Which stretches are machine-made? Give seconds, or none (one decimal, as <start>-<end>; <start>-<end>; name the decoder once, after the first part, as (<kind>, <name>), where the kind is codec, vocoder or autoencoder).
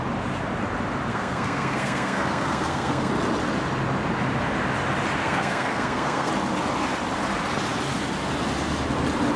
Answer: 1.1-3.1 (codec, SNAC); 5.2-6.3